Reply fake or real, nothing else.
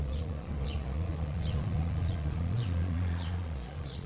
fake